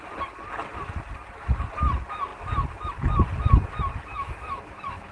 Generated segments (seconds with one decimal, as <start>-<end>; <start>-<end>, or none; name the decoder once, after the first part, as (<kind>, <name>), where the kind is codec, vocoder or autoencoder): 4.1-5.1 (autoencoder, DAC-VAE)